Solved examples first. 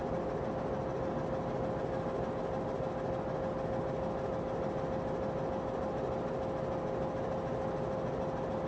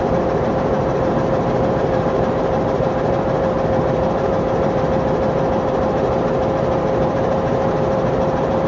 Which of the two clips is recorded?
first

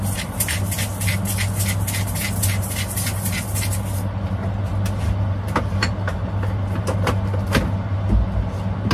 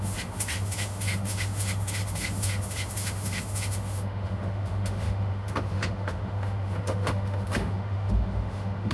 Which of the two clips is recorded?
first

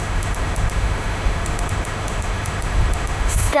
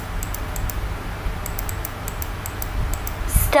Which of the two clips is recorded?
second